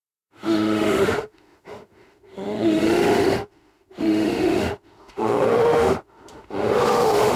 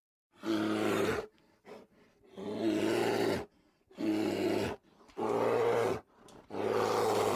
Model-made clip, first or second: first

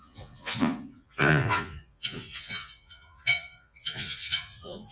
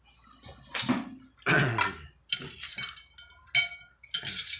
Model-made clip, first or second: first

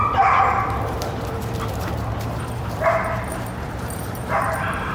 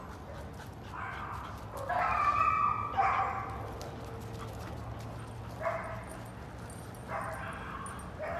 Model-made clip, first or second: first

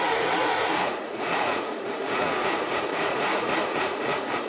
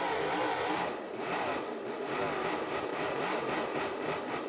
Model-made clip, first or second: first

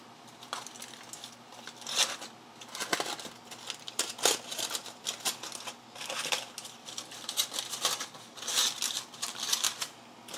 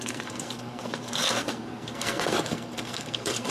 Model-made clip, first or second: second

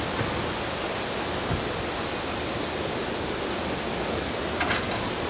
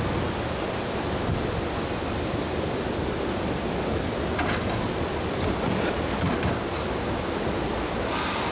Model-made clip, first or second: second